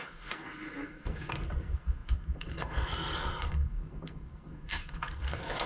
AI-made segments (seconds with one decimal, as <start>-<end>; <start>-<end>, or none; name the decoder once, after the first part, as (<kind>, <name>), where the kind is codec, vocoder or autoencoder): 0.0-5.7 (codec, SNAC)